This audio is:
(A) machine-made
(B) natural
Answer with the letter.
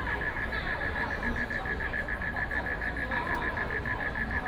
B